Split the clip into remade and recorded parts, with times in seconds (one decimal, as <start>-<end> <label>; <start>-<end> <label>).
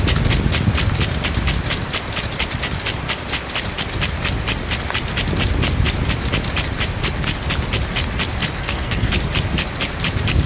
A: 0.0-8.6 recorded; 8.6-9.1 remade; 9.1-10.5 recorded